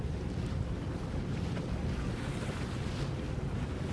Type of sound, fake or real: real